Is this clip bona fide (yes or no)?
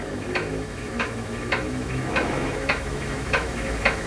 no